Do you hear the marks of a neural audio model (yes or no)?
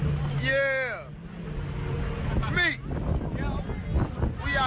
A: no